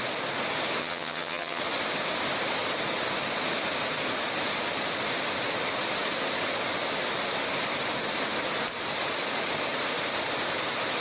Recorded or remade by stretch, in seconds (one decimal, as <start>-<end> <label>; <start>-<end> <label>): 0.0-0.8 recorded; 0.8-1.6 remade; 1.6-11.0 recorded